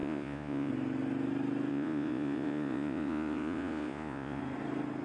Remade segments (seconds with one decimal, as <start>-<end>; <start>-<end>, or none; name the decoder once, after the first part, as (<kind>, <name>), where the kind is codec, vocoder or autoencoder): 0.0-0.7 (vocoder, Vocos); 1.7-4.4